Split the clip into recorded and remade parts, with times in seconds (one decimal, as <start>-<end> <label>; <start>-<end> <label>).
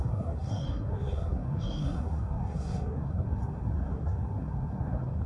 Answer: 0.0-5.3 remade